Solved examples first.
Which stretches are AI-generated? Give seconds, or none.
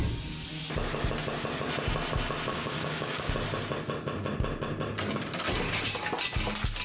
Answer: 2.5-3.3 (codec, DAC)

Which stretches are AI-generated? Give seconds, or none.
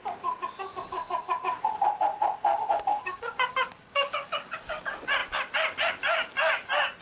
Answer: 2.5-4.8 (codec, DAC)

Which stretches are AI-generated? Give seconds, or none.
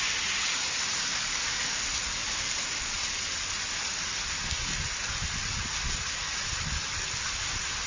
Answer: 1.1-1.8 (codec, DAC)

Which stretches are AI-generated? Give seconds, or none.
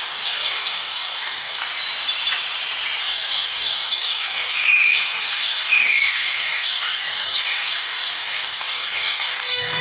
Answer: 0.0-1.6 (codec, DAC); 3.0-9.8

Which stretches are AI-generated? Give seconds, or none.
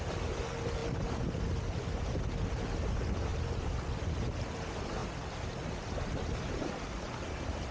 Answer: none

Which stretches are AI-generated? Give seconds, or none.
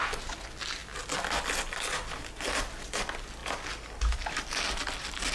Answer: none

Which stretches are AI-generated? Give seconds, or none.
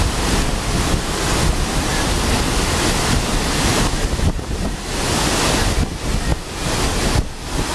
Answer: none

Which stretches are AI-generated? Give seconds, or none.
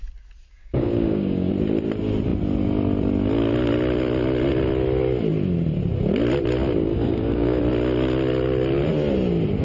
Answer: 0.6-1.5 (codec, DAC); 6.9-7.6